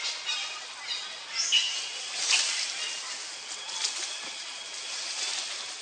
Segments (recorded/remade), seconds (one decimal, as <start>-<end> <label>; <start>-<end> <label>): 0.0-5.8 recorded